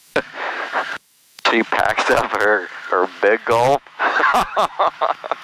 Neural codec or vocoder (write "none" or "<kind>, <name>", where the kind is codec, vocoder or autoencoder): autoencoder, DAC-VAE